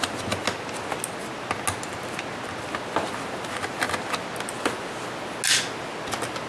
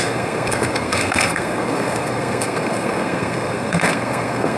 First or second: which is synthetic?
second